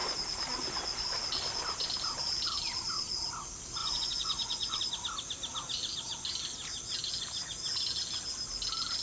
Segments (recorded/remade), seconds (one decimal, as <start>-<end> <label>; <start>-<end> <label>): 0.0-3.8 recorded; 3.8-4.8 remade; 4.8-9.0 recorded